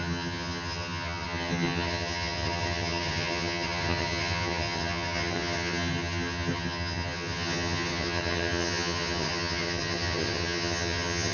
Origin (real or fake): fake